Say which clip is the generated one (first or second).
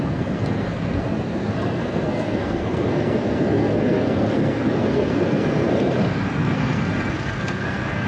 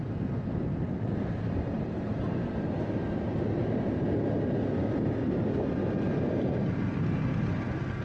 first